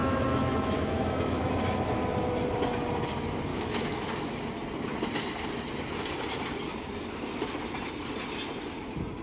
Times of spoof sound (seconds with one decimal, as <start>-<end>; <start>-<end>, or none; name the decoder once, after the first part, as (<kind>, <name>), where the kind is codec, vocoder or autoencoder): 0.0-1.5 (autoencoder, DAC-VAE); 3.5-4.1